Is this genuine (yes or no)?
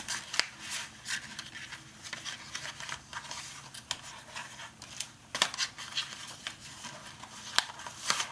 yes